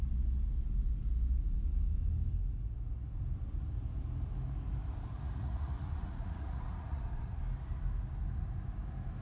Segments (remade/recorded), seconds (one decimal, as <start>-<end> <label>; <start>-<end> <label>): 0.0-5.1 recorded; 5.1-7.4 remade; 7.4-9.2 recorded